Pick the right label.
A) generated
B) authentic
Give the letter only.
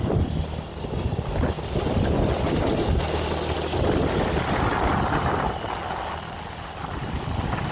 B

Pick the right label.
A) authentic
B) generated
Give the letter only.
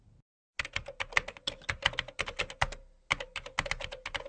A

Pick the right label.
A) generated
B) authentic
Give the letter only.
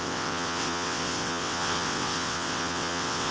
A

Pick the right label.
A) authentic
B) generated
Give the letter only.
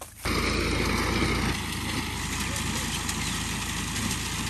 A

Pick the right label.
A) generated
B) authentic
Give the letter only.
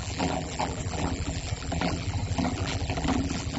A